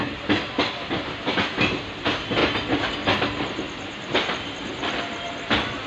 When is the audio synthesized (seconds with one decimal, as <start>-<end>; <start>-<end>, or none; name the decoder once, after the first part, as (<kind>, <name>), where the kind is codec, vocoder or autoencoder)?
none